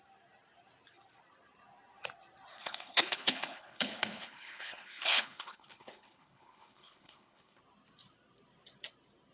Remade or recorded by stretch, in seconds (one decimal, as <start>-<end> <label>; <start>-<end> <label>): 0.0-2.5 recorded; 2.5-7.6 remade; 7.6-9.3 recorded